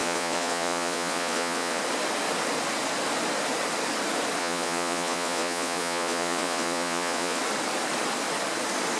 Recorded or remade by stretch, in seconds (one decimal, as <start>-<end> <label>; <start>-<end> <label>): 0.0-1.8 remade; 1.8-4.4 recorded; 4.4-7.4 remade; 7.4-9.0 recorded